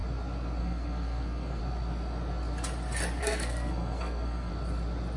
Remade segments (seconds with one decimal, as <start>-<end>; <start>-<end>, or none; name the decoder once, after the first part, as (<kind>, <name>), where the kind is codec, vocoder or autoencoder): 0.6-1.6 (codec, SNAC); 3.2-4.5

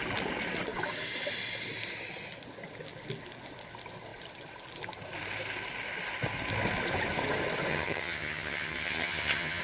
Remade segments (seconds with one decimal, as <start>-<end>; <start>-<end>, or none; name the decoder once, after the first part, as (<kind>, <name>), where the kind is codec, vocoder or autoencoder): 7.7-9.6 (vocoder, HiFi-GAN)

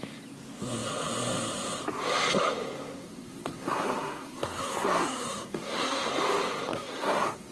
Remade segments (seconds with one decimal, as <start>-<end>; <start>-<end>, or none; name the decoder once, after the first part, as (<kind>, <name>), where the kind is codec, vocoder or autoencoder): 3.0-6.1 (codec, SNAC); 6.7-7.5

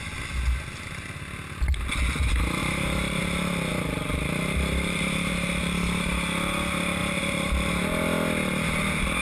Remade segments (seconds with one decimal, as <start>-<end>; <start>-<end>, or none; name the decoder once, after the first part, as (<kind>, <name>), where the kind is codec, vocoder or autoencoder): 2.6-3.2 (vocoder, BigVGAN v2); 3.7-5.3; 7.0-7.7